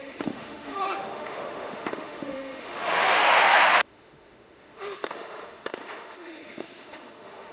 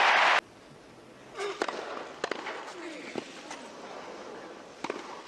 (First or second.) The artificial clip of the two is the first